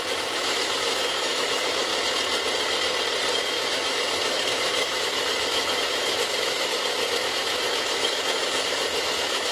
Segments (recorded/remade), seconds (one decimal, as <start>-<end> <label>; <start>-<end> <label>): 0.0-1.9 remade; 1.9-3.3 recorded; 3.3-9.5 remade